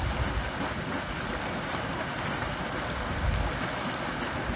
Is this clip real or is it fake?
real